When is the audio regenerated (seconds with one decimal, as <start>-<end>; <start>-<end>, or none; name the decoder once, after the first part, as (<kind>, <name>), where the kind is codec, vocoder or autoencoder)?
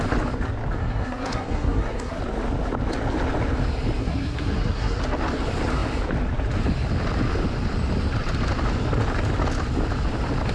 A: 0.8-2.2 (codec, SNAC); 4.0-5.0